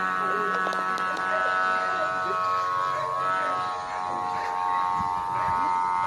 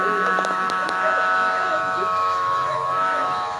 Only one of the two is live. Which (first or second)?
first